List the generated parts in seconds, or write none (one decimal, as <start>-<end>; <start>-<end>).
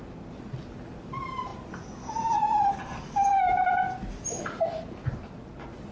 1.5-2.7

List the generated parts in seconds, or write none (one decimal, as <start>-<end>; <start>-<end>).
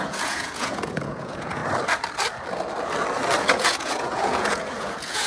0.0-1.6; 3.4-5.3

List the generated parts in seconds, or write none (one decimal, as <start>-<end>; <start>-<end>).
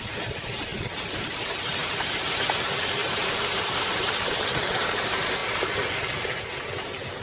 1.8-2.4; 3.0-3.9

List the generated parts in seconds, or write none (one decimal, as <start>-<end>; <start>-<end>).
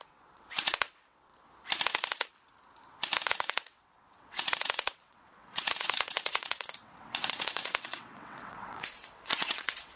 0.0-1.3; 3.3-10.0